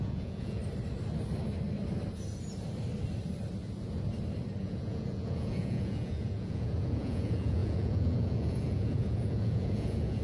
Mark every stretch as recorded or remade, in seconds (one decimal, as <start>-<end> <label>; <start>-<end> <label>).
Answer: 0.0-0.6 remade; 0.6-4.6 recorded; 4.6-10.2 remade